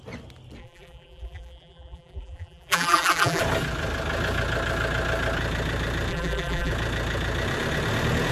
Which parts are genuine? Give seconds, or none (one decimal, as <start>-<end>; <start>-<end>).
0.0-0.6; 3.4-6.1; 6.7-8.3